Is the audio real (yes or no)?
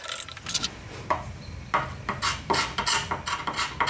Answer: yes